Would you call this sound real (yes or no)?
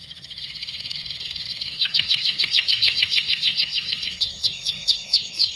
no